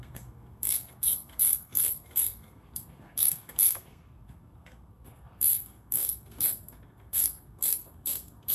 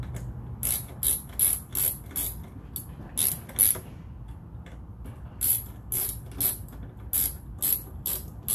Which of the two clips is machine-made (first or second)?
first